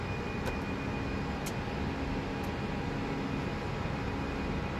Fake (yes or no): no